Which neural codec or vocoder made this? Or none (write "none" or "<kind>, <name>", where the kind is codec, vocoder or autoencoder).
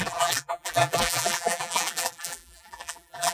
vocoder, BigVGAN v2